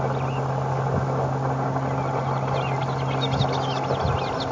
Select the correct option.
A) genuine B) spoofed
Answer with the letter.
A